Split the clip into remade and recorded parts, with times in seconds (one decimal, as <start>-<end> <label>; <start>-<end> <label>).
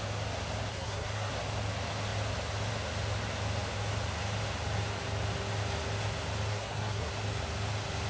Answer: 0.0-0.7 recorded; 0.7-1.3 remade; 1.3-6.5 recorded; 6.5-7.1 remade; 7.1-8.1 recorded